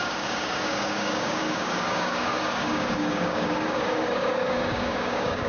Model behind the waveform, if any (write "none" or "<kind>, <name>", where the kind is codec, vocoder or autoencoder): codec, DAC